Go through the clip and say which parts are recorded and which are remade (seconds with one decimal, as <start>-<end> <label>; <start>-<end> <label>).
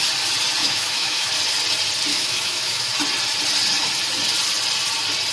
0.0-0.6 recorded; 0.6-1.3 remade; 1.3-2.1 recorded; 2.1-2.9 remade; 2.9-5.3 recorded